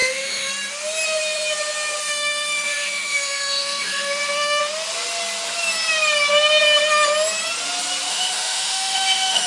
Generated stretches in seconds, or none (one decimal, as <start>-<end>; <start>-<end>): 0.0-0.5; 2.0-4.6; 8.1-9.5